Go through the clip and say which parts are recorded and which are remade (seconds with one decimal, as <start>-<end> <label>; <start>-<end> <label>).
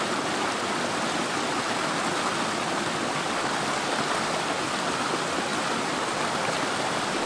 0.0-7.3 recorded